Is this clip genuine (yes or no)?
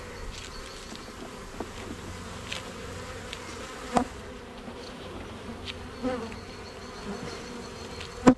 yes